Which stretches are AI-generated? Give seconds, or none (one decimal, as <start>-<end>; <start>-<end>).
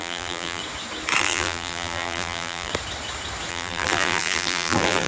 0.0-0.6; 1.2-2.7; 3.5-5.1